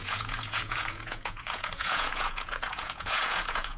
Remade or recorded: remade